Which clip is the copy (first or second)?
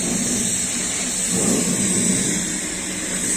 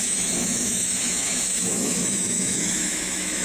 second